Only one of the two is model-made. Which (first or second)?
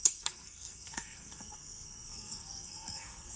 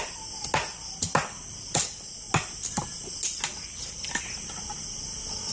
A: first